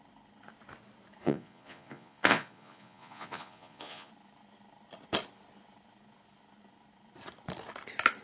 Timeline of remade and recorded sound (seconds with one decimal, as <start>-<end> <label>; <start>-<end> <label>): 0.0-1.2 recorded; 1.2-4.1 remade; 4.1-8.2 recorded